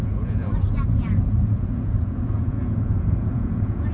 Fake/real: fake